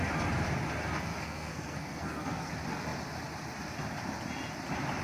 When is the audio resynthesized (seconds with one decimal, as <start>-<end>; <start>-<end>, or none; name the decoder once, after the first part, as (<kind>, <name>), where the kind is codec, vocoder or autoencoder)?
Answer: 1.1-2.5 (codec, SNAC)